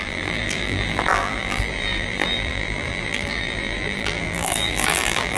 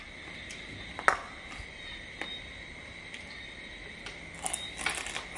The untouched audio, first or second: second